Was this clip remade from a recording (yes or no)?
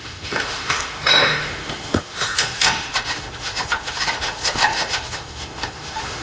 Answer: yes